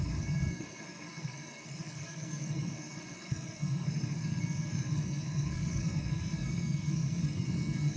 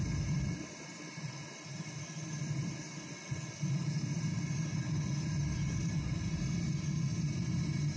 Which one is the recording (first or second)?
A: second